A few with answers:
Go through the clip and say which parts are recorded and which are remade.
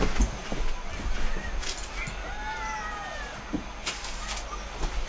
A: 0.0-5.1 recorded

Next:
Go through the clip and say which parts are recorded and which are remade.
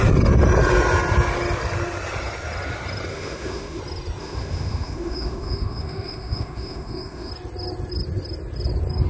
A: 0.0-3.1 recorded; 3.1-3.8 remade; 3.8-4.2 recorded; 4.2-7.3 remade; 7.3-9.1 recorded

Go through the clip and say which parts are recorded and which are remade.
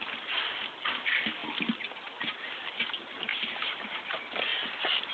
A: 0.0-3.3 recorded; 3.3-4.0 remade; 4.0-4.5 recorded; 4.5-5.1 remade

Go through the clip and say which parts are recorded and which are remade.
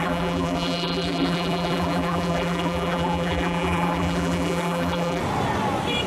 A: 0.0-5.2 remade; 5.2-6.1 recorded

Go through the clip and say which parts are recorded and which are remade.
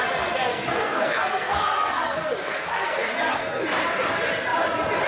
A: 0.0-0.5 recorded; 0.5-3.6 remade; 3.6-5.1 recorded